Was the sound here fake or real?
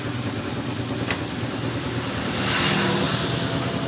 real